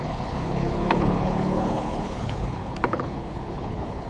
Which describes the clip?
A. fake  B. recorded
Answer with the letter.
A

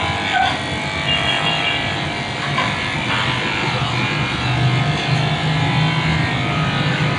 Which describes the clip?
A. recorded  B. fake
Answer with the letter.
A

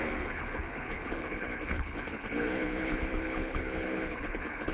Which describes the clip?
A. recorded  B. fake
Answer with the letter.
B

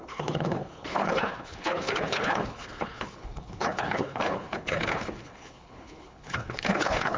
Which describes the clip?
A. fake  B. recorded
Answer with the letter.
A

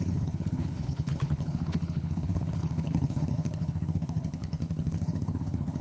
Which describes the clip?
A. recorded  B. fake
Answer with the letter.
B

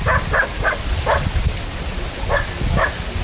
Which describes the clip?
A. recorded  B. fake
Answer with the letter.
A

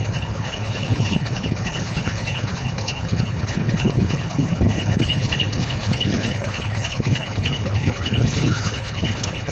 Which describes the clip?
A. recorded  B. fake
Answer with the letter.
B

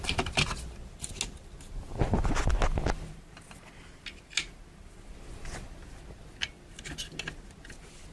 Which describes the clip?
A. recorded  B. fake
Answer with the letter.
A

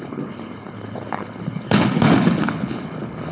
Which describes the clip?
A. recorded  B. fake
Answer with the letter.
B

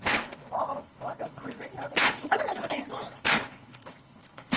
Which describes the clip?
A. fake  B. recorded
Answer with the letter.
A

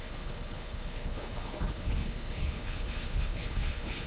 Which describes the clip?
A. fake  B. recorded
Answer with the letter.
A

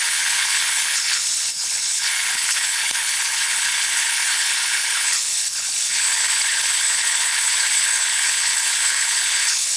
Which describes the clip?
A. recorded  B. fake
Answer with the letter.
B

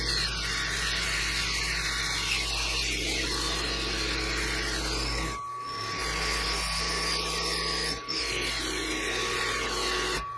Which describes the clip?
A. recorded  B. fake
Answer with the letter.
A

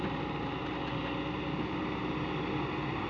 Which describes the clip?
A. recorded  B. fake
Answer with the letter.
A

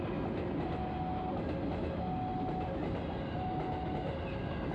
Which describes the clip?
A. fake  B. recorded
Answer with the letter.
B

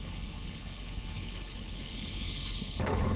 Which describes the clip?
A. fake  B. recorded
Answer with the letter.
A